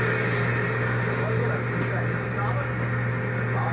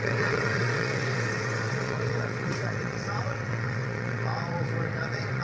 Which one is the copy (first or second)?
second